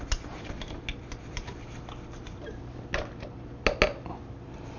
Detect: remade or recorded recorded